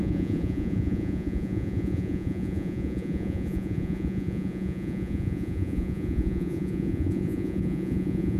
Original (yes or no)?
no